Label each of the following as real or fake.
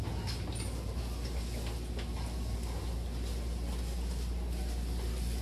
real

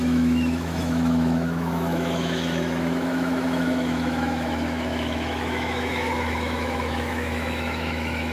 fake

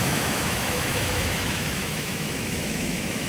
fake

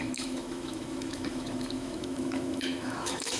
fake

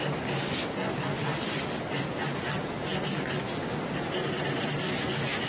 real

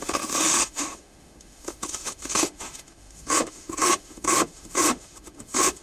fake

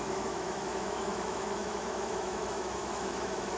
fake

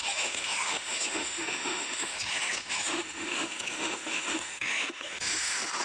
fake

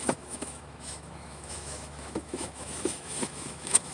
fake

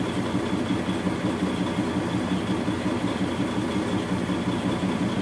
real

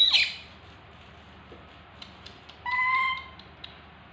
real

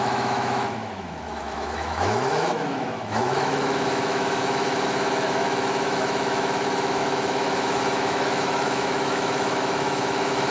fake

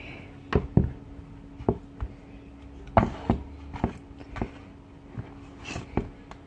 real